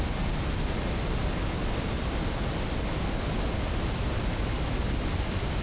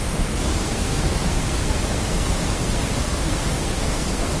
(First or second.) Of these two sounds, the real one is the first